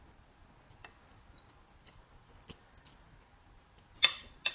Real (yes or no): yes